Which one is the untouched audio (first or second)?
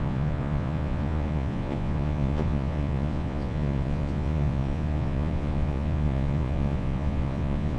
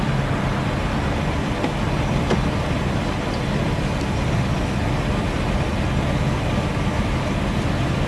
second